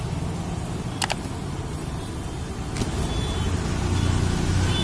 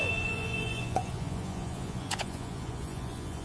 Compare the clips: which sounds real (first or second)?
first